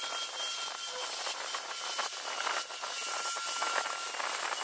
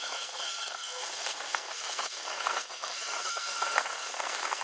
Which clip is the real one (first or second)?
first